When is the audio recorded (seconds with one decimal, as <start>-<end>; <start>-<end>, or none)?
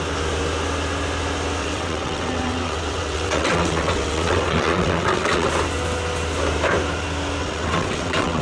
0.0-1.6; 5.5-7.4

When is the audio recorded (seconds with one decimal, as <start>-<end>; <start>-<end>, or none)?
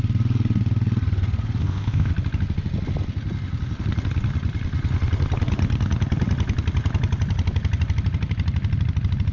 0.0-1.6; 2.1-9.3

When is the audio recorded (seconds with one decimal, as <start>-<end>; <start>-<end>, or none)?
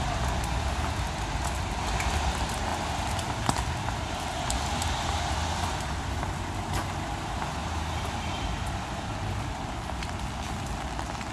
0.0-2.7; 5.3-11.3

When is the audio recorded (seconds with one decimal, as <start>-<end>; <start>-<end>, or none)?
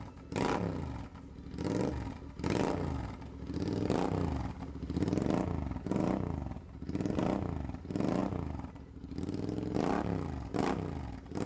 0.0-8.2; 9.2-11.5